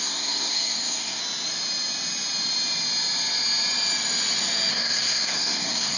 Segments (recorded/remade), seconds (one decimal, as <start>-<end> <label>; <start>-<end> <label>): 0.0-1.2 remade; 1.2-4.7 recorded; 4.7-6.0 remade